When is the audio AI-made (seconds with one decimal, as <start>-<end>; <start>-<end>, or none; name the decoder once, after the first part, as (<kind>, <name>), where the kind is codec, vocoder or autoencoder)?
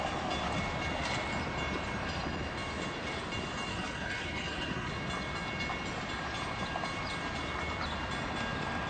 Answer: 3.7-4.9 (codec, HILCodec)